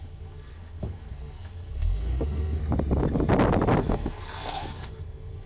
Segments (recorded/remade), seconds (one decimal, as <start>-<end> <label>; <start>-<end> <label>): 0.0-2.6 remade; 2.6-3.8 recorded; 3.8-5.5 remade